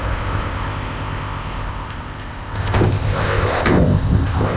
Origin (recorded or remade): remade